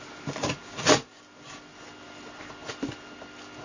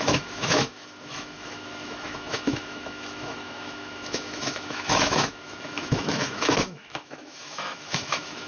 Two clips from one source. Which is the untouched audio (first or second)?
first